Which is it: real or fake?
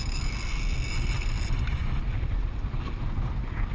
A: real